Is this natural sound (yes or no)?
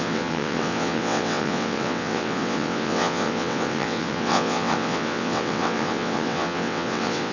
no